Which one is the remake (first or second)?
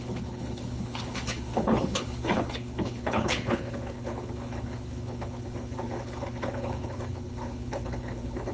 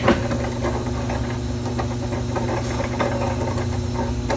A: first